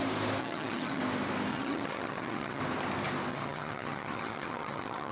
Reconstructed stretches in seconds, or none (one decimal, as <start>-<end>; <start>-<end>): 0.4-1.0; 1.5-2.6; 3.3-5.1